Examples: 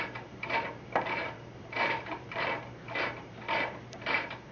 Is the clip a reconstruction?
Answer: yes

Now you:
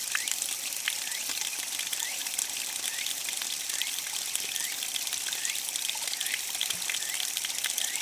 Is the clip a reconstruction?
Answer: yes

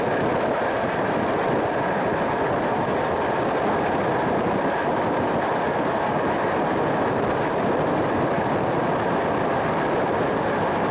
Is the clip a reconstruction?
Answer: no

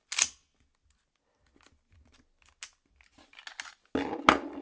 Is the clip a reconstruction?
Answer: no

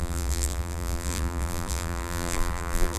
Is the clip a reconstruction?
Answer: yes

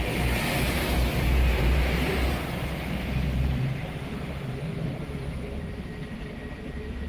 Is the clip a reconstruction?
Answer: yes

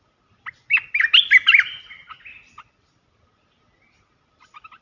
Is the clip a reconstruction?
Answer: no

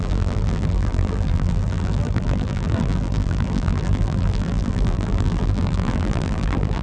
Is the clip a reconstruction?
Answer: yes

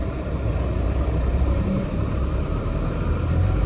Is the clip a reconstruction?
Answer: yes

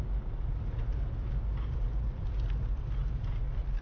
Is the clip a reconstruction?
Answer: no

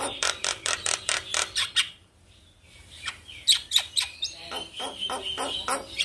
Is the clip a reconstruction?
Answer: yes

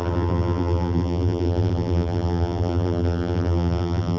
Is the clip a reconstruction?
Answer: yes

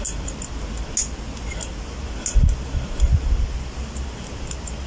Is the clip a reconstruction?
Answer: no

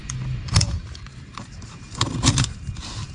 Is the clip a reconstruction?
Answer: yes